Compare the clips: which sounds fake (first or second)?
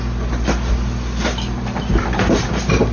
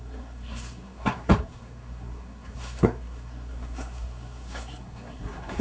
second